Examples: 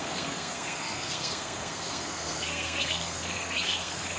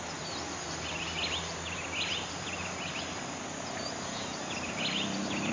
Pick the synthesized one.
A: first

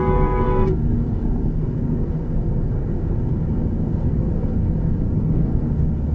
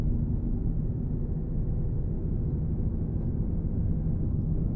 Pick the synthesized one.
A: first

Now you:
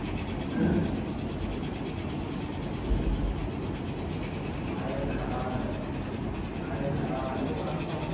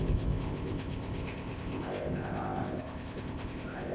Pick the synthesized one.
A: second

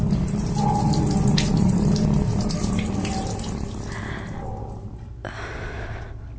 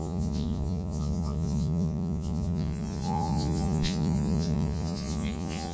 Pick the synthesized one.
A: second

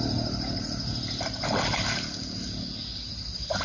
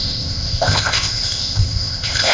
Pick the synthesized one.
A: second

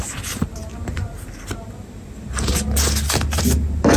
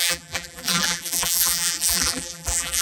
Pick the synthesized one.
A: second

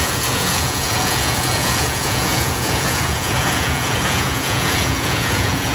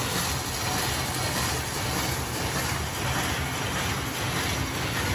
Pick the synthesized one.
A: first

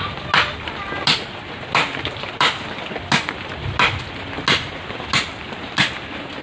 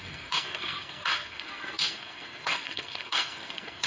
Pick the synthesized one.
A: second